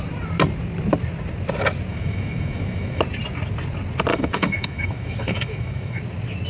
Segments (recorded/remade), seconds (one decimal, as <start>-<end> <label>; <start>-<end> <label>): 0.0-1.9 recorded; 1.9-3.0 remade; 3.0-4.1 recorded; 4.1-6.0 remade; 6.0-6.5 recorded